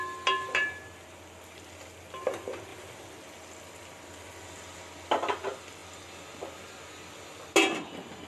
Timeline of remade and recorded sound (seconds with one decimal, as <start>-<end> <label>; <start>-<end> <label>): 0.0-8.3 recorded